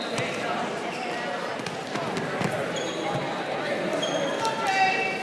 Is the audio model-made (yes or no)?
no